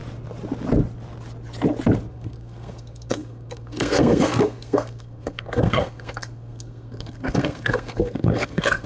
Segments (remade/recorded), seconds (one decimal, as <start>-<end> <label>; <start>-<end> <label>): 0.0-2.1 recorded; 2.1-8.9 remade